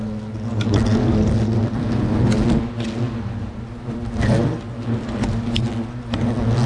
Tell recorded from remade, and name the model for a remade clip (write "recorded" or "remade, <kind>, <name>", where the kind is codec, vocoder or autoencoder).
recorded